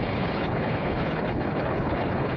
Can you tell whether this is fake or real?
fake